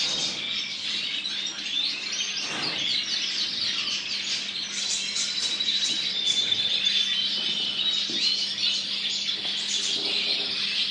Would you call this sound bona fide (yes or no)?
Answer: yes